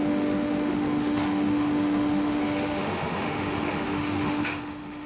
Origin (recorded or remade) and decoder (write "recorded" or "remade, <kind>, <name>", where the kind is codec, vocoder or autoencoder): remade, autoencoder, DAC-VAE